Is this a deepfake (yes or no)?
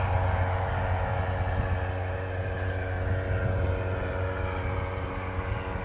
no